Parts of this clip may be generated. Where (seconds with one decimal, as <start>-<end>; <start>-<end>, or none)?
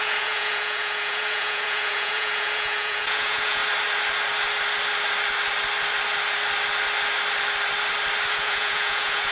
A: 0.0-3.6; 8.3-9.3